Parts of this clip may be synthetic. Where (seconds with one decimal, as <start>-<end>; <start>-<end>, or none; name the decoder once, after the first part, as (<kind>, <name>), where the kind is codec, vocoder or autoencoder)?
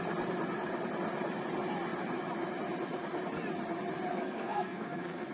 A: 4.1-5.3 (codec, SNAC)